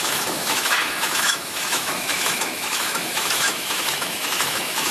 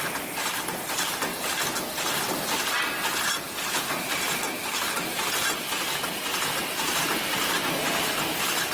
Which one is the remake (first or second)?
first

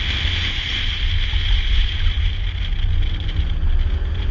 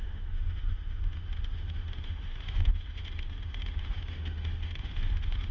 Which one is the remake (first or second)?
second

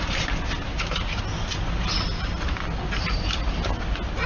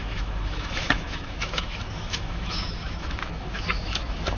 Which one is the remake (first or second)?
second